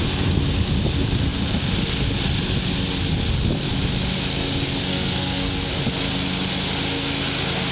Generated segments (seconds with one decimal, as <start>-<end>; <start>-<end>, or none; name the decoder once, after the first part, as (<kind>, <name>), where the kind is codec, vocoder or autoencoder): 4.9-5.7 (codec, SNAC)